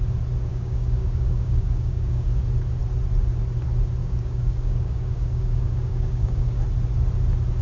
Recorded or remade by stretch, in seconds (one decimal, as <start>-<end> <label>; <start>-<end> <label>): 0.0-0.5 recorded; 0.5-2.4 remade; 2.4-4.0 recorded; 4.0-6.6 remade; 6.6-7.6 recorded